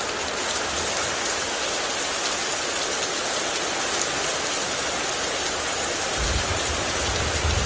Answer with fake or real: real